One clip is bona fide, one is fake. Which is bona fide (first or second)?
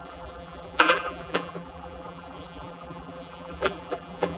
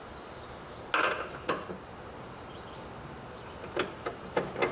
second